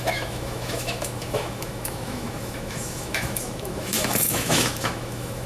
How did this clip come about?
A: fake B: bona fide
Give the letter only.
A